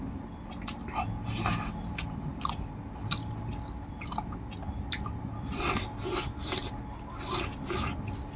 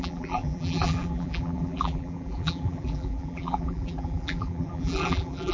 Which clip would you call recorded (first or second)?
first